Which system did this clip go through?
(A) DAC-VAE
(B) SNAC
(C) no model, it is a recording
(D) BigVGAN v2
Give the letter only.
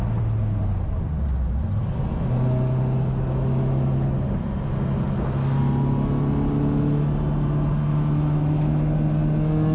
C